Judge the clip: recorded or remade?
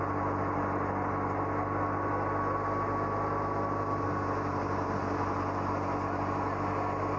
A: recorded